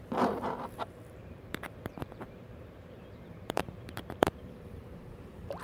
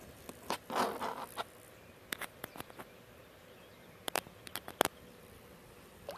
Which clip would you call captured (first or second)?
second